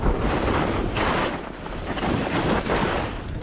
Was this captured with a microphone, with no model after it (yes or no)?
yes